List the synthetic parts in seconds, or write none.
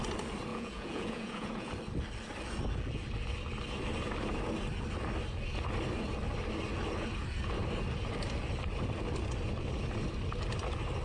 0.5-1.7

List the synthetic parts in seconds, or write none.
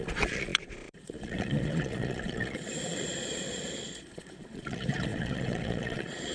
0.0-6.3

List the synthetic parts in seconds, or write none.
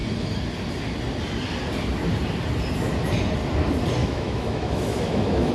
4.0-5.5